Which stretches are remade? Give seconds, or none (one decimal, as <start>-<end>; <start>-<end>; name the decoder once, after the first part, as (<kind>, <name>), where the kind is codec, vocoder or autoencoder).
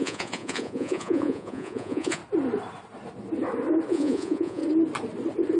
0.0-2.2 (vocoder, Vocos); 3.9-4.6